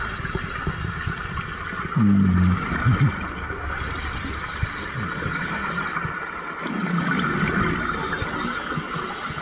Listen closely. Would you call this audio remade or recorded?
recorded